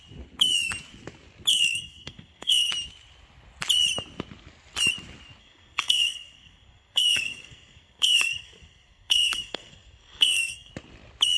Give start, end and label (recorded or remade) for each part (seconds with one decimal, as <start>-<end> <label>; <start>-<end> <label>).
0.0-1.5 recorded; 1.5-2.7 remade; 2.7-5.4 recorded; 5.4-10.7 remade; 10.7-11.4 recorded